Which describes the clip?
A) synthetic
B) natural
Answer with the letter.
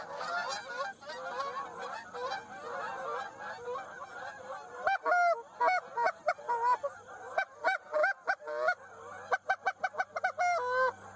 B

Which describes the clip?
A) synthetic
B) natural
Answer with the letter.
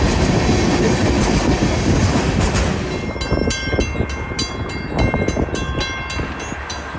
B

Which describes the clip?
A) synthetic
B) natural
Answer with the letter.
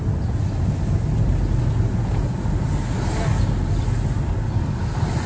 B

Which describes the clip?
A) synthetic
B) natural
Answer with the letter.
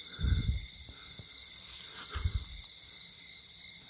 A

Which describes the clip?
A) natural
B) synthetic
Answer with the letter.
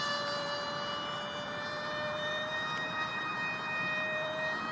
B